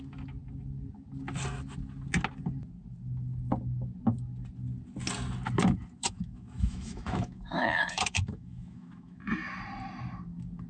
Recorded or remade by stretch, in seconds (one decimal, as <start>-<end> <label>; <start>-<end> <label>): 0.0-6.0 recorded; 6.0-9.2 remade; 9.2-10.7 recorded